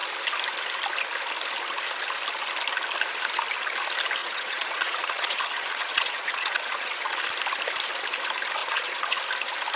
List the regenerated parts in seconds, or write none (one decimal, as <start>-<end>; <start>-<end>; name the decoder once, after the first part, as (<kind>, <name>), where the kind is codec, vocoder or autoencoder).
4.2-7.2 (vocoder, Vocos); 8.6-9.2